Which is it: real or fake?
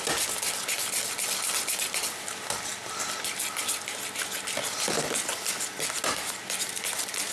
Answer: real